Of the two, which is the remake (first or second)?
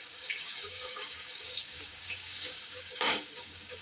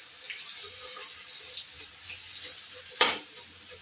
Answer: first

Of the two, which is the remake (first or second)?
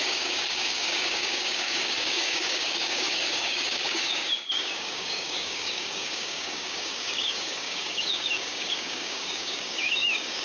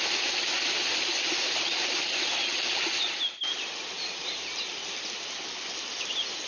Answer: first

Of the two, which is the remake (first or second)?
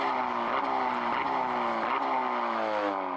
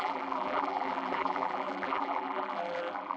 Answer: second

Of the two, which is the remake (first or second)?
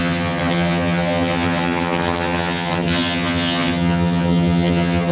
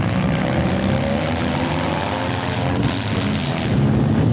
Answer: first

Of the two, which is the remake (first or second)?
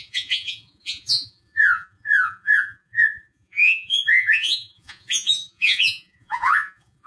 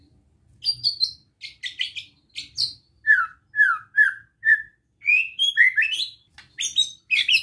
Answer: first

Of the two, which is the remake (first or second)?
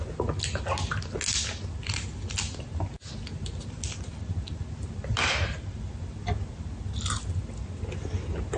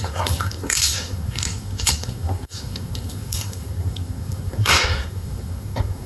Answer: second